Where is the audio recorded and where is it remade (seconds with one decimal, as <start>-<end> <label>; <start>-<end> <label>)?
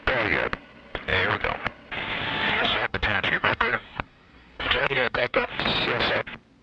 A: 0.0-2.5 recorded; 2.5-5.5 remade; 5.5-6.6 recorded